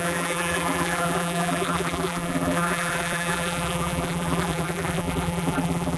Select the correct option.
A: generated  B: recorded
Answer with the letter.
A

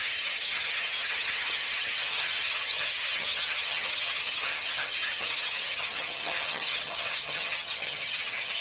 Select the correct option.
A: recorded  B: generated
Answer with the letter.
B